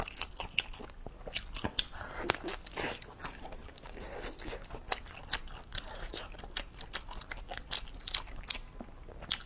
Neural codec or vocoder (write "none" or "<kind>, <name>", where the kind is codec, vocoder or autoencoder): none